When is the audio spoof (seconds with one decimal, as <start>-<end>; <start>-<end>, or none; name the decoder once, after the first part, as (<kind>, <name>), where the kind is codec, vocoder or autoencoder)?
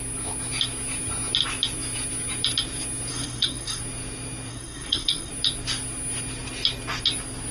3.1-3.8 (codec, SNAC); 4.5-5.3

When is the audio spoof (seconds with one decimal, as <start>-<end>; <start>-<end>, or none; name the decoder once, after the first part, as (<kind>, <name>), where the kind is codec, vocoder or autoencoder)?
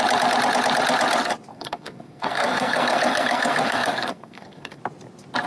1.5-4.8 (codec, SNAC)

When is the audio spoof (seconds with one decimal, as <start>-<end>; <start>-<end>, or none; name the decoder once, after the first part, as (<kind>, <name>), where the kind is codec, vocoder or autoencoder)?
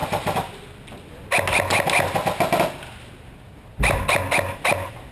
none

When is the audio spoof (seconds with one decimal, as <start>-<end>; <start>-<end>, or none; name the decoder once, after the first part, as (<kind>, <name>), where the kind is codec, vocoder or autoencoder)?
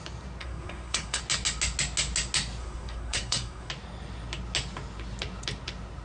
0.4-1.2 (codec, SNAC); 2.6-3.7